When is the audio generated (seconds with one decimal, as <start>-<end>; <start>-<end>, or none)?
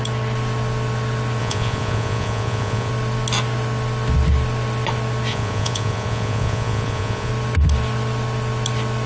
1.4-2.9; 5.3-7.3